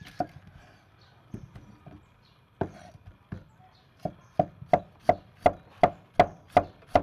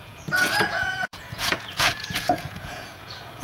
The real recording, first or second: first